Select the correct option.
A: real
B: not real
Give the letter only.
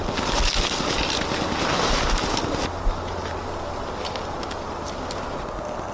A